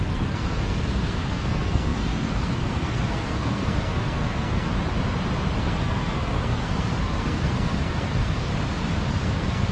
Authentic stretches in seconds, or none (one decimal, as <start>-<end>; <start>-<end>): 4.7-5.6; 8.5-9.1